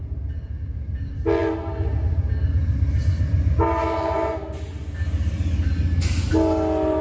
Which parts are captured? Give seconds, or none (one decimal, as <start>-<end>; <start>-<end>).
0.0-7.0